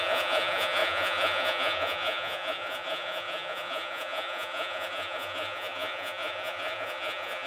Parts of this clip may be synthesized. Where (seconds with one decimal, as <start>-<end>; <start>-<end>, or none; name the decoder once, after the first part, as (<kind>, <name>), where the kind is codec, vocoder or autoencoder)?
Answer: 0.0-7.5 (vocoder, Vocos)